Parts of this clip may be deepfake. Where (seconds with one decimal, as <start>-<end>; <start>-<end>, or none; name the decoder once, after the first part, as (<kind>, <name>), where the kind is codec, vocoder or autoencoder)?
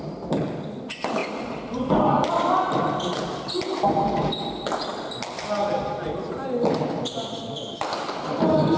none